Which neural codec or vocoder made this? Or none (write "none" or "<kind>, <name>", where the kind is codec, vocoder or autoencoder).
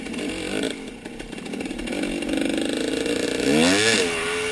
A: none